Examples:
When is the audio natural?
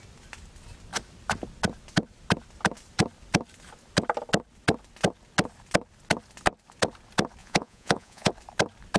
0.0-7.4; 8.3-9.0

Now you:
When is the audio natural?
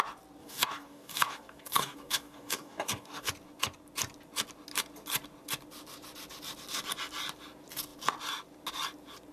0.0-0.4; 3.3-9.3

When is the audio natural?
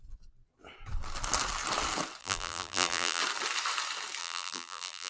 0.0-2.2; 3.2-4.2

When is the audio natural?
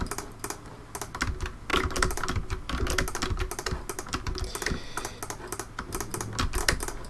0.0-7.1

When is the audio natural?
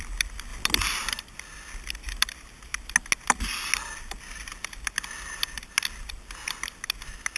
0.0-7.4